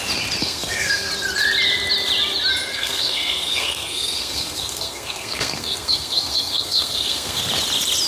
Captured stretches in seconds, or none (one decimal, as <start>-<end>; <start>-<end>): 0.0-0.4; 1.1-2.7; 7.4-8.1

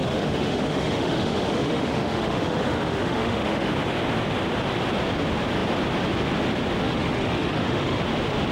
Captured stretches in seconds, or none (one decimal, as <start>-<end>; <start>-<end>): 3.7-6.8; 8.0-8.5